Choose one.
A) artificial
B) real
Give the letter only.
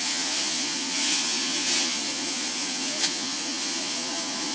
A